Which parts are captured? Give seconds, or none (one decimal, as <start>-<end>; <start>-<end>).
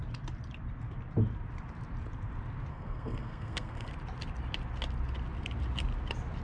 0.0-2.7; 3.9-6.4